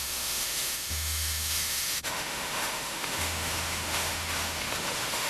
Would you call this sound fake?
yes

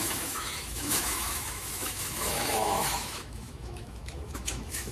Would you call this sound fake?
yes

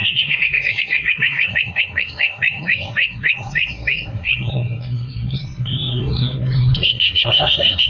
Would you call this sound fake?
yes